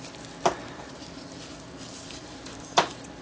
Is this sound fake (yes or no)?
no